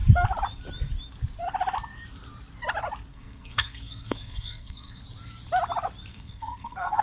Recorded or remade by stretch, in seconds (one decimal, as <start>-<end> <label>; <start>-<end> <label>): 0.0-3.1 recorded; 3.1-5.0 remade; 5.0-6.1 recorded; 6.1-7.0 remade